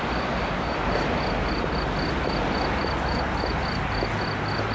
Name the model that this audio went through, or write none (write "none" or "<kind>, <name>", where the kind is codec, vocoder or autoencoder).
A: none